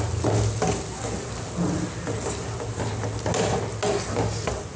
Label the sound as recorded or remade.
recorded